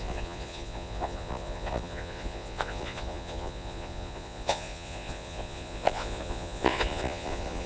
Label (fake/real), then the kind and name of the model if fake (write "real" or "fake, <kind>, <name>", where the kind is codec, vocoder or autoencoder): fake, vocoder, Vocos